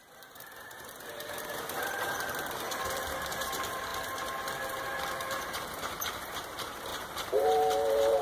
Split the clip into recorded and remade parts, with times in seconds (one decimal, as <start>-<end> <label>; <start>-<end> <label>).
0.0-3.9 remade; 3.9-4.8 recorded; 4.8-8.2 remade